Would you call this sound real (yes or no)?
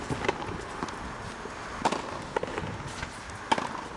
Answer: yes